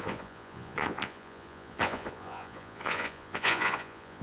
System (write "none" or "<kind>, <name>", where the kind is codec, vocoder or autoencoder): vocoder, Vocos